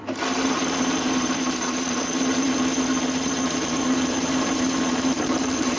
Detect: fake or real fake